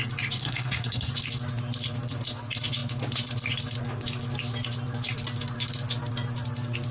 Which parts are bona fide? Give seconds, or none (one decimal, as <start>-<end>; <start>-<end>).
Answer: 0.0-0.4; 1.1-6.9

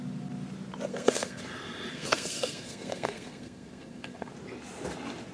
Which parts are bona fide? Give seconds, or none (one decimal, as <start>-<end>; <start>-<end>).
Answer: 0.0-0.9; 1.4-1.9; 4.3-5.3

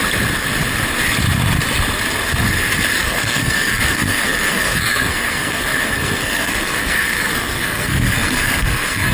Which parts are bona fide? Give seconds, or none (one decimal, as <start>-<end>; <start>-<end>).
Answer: 0.0-3.0

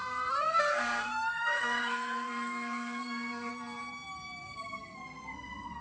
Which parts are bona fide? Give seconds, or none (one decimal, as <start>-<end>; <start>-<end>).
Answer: 3.5-4.4

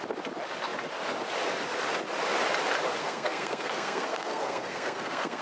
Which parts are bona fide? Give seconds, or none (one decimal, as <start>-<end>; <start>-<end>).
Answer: 0.0-3.0

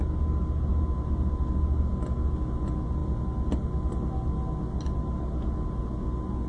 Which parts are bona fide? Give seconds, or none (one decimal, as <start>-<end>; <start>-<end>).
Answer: 0.0-6.5

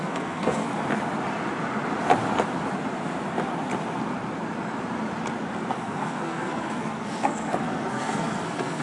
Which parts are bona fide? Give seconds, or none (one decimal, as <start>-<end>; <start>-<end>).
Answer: 0.7-5.7